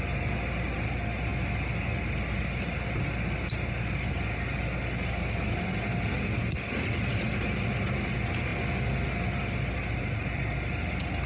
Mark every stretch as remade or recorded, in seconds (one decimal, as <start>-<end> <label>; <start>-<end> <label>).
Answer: 0.0-11.3 recorded

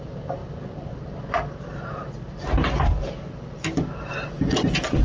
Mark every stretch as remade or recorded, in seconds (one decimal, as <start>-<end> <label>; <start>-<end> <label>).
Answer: 0.0-5.0 recorded

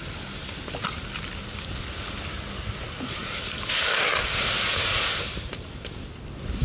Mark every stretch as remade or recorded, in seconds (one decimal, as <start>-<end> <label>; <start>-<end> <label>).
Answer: 0.0-6.6 recorded

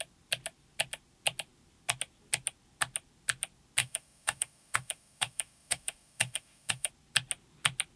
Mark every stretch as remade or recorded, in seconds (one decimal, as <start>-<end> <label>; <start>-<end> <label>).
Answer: 0.0-3.8 recorded; 3.8-6.9 remade; 6.9-8.0 recorded

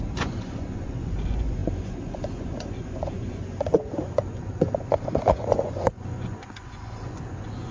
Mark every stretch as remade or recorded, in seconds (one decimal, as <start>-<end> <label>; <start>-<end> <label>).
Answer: 0.0-7.7 remade

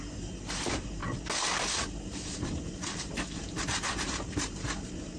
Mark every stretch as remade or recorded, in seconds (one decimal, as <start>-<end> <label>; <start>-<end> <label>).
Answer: 0.0-1.0 remade; 1.0-1.7 recorded; 1.7-5.2 remade

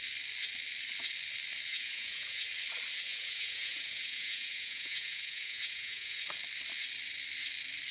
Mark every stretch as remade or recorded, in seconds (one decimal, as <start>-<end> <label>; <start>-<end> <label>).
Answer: 0.0-1.7 recorded; 1.7-2.5 remade; 2.5-3.1 recorded; 3.1-6.2 remade; 6.2-7.9 recorded

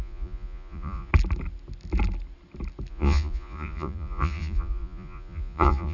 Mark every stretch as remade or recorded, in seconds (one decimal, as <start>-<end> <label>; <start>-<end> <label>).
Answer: 0.0-1.1 remade; 1.1-2.9 recorded; 2.9-5.9 remade